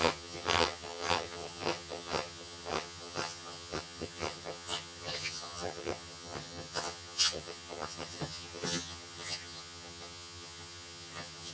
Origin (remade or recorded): remade